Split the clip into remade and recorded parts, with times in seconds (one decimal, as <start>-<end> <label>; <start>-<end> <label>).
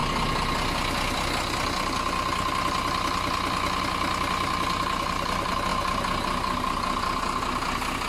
0.0-8.1 recorded